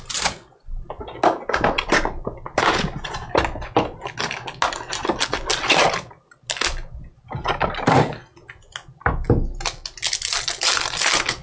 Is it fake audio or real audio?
real